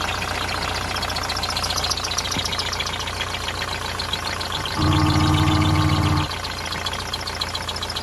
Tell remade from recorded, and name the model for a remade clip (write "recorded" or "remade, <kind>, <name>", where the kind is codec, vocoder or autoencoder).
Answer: recorded